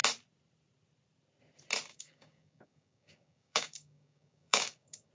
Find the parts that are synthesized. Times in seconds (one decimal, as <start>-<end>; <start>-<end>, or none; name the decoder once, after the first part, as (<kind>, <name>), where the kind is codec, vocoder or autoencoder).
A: 1.9-5.1 (codec, DAC)